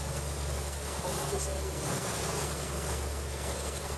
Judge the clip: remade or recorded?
remade